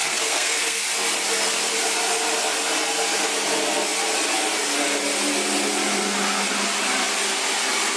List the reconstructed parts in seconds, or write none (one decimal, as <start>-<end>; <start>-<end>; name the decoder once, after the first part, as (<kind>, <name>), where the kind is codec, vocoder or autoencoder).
0.0-0.8 (codec, SNAC)